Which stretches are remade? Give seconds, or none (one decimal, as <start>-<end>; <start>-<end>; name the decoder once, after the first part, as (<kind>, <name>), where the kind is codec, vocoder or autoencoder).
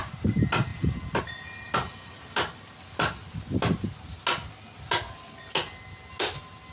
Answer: none